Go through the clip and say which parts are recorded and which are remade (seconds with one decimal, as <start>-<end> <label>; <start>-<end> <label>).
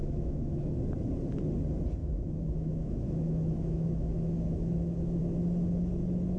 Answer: 0.0-0.8 remade; 0.8-2.0 recorded; 2.0-5.2 remade; 5.2-6.4 recorded